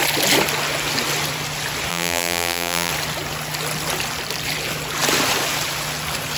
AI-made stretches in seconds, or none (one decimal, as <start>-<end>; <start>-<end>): 1.9-2.9